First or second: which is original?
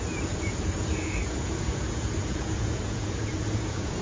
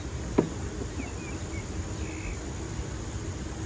second